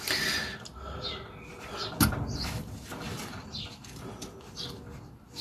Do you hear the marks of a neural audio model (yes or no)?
no